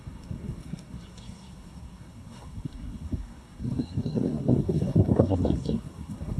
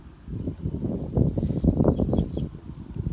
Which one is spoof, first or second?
first